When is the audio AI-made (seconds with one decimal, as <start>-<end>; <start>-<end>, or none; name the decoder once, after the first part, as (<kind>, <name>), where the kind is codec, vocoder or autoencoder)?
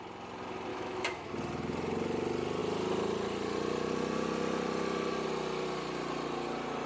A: 0.7-1.3 (autoencoder, DAC-VAE)